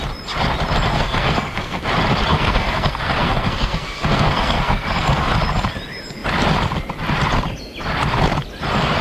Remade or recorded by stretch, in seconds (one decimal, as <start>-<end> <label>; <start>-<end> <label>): 0.0-0.9 recorded; 0.9-1.8 remade; 1.8-2.3 recorded; 2.3-5.3 remade; 5.3-9.0 recorded